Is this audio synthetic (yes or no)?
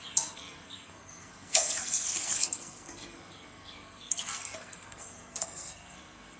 yes